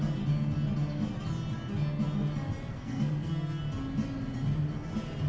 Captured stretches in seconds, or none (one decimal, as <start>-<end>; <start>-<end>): 0.0-2.7; 3.6-5.3